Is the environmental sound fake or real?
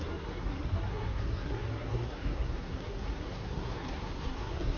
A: fake